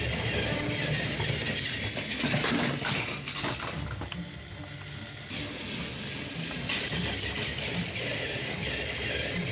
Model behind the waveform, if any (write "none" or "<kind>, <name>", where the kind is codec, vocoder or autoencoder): none